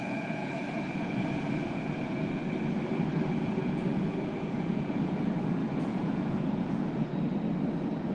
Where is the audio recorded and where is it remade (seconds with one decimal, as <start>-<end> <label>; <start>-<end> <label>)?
0.0-2.4 remade; 2.4-3.4 recorded; 3.4-7.1 remade; 7.1-8.1 recorded